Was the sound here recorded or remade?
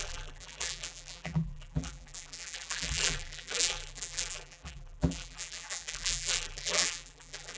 remade